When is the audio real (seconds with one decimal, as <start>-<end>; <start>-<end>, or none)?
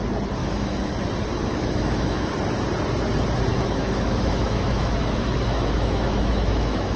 0.0-0.4; 0.9-1.5; 2.3-3.5